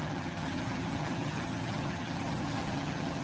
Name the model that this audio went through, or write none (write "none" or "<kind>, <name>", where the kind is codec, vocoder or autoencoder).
vocoder, HiFi-GAN